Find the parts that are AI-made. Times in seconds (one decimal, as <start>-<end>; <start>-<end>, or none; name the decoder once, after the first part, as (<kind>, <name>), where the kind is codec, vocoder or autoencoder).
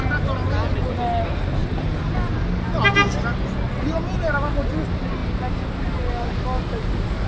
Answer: none